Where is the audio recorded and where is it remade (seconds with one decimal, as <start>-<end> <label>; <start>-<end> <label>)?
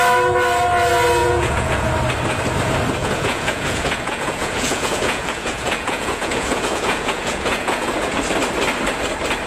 0.0-1.2 recorded; 1.2-1.9 remade; 1.9-3.0 recorded; 3.0-8.2 remade; 8.2-9.5 recorded